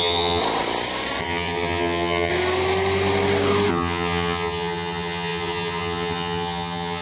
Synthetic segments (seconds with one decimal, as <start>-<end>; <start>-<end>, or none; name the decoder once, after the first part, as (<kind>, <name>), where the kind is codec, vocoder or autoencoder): 0.0-0.4 (vocoder, HiFi-GAN); 1.2-2.3; 3.7-7.0